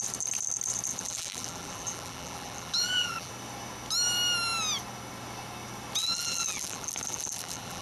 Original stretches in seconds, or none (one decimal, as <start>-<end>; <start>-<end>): 0.0-0.9; 3.3-6.0